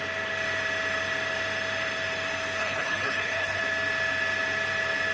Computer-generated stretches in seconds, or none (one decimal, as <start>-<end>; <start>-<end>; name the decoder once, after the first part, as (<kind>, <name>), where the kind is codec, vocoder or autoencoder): 2.6-3.6 (codec, HILCodec)